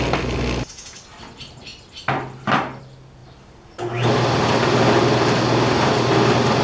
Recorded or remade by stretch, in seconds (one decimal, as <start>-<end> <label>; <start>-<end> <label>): 0.0-6.6 recorded